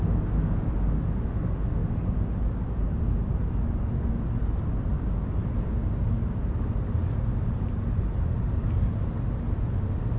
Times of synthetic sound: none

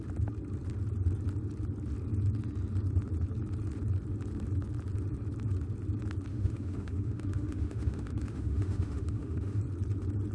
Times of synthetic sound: 6.3-9.6

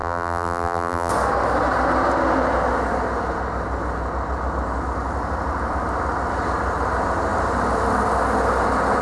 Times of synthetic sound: 0.0-1.1